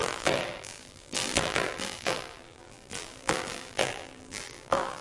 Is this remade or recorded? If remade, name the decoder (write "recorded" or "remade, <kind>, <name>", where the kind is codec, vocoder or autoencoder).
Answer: remade, vocoder, BigVGAN v2